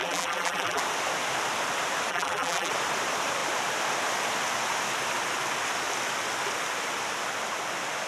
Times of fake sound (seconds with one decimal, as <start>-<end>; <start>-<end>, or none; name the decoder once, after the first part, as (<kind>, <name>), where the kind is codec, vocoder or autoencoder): 0.0-0.8 (vocoder, BigVGAN v2); 2.1-2.7